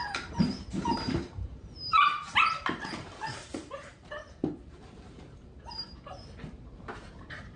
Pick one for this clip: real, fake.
fake